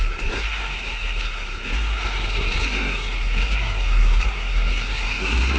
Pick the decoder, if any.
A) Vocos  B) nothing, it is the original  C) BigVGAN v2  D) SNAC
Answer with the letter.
D